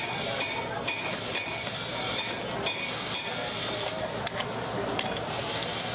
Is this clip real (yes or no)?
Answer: yes